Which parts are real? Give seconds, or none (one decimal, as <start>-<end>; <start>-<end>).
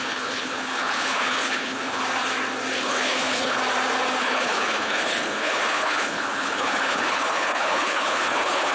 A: 2.0-2.8; 3.6-4.2